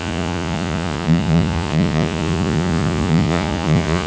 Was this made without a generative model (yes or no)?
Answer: no